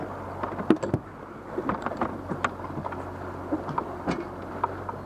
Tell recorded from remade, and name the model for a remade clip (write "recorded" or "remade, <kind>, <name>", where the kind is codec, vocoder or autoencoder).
recorded